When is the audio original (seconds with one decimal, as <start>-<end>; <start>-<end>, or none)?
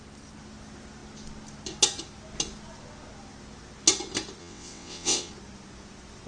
0.0-4.4; 5.3-6.3